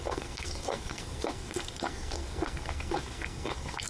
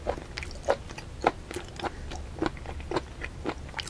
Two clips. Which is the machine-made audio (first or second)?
first